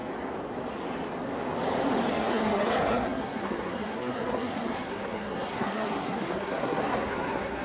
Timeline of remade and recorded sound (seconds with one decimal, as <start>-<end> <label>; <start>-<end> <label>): 0.0-2.1 recorded; 2.1-7.6 remade